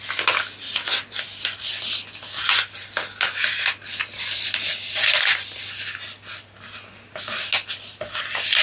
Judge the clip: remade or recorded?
recorded